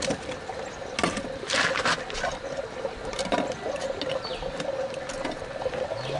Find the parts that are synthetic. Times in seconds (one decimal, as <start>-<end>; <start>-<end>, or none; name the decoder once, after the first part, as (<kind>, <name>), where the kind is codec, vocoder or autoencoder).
none